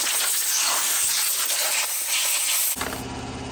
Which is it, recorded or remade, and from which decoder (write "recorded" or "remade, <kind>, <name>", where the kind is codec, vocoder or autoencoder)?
recorded